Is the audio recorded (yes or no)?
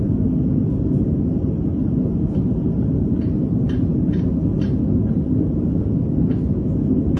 yes